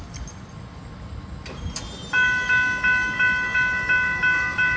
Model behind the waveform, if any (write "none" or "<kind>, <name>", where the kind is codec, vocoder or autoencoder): none